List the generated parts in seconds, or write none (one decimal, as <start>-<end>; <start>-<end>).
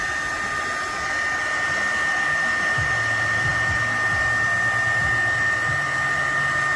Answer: none